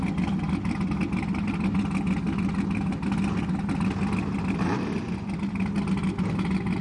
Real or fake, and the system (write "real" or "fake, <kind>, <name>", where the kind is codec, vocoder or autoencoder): real